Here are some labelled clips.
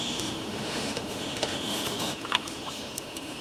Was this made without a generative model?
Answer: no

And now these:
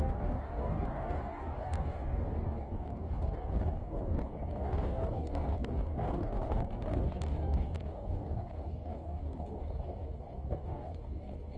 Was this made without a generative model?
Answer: no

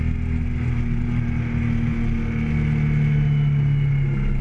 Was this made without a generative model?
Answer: yes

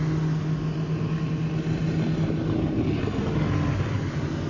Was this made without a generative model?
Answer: yes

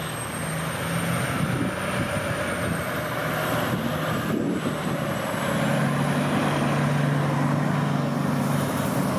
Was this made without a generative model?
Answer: yes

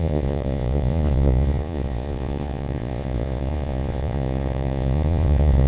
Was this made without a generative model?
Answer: no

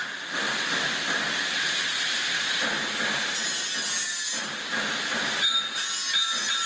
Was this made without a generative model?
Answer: yes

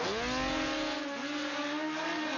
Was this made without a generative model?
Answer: yes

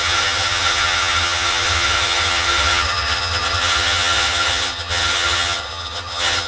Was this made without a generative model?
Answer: no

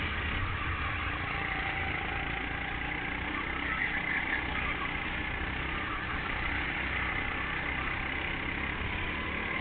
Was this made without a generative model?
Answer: yes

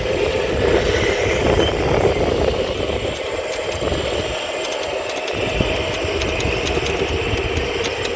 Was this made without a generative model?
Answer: yes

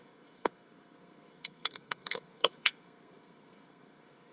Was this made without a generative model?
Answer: no